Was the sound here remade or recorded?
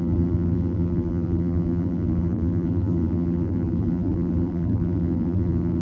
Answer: remade